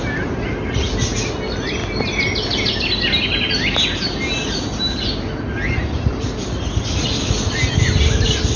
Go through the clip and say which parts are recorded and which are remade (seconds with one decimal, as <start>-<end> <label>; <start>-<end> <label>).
0.0-8.6 recorded